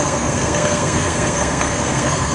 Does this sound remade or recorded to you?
remade